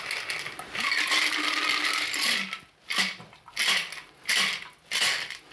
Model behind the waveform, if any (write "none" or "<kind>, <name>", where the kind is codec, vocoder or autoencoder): none